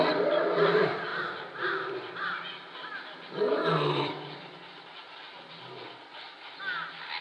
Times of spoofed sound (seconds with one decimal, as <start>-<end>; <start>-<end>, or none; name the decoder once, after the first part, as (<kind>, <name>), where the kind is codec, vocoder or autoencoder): none